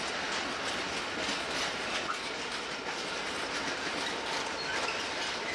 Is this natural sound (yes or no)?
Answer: yes